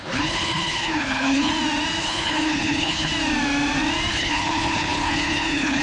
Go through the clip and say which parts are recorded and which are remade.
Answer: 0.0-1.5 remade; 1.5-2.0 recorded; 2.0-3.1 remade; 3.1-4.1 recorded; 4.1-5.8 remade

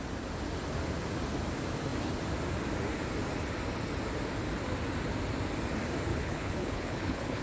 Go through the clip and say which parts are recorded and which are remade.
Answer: 0.0-6.1 recorded; 6.1-7.4 remade

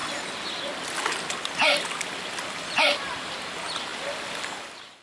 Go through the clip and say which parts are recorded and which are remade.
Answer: 0.0-5.0 recorded

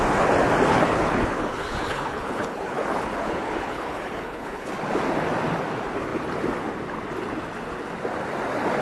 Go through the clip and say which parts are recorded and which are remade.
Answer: 0.0-0.7 recorded; 0.7-4.7 remade; 4.7-8.8 recorded

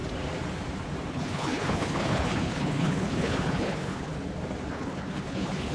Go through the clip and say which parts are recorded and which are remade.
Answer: 0.0-1.1 recorded; 1.1-4.1 remade; 4.1-4.7 recorded; 4.7-5.7 remade

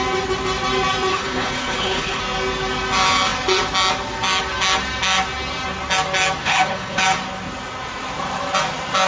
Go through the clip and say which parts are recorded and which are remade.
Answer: 0.0-1.1 recorded; 1.1-2.2 remade; 2.2-6.4 recorded; 6.4-7.0 remade; 7.0-9.1 recorded